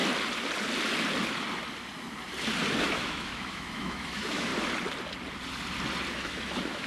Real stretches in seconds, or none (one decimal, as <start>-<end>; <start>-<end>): 0.0-2.8; 4.5-6.1